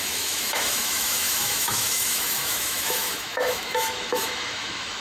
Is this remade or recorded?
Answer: remade